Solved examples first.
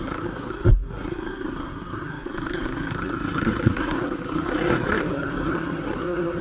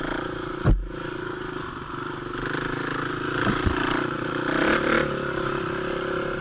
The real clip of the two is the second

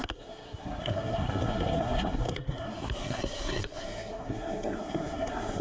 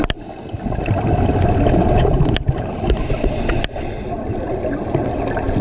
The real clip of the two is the second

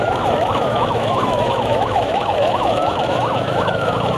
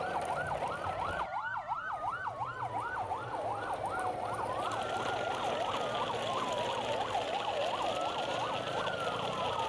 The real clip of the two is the second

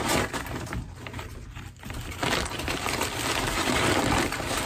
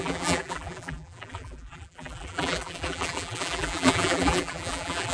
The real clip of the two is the first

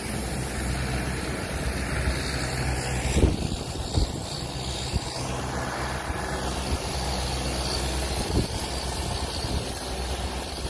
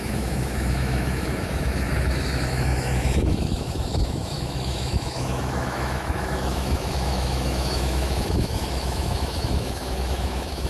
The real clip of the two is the first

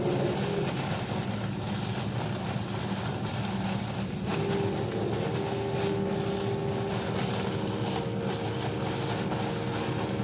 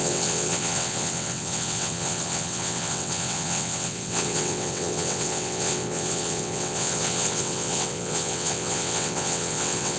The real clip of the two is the first